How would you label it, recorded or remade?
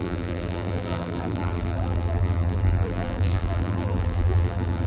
remade